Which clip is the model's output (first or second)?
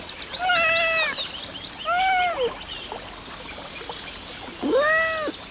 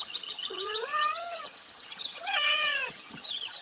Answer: second